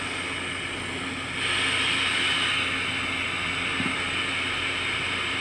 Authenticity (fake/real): real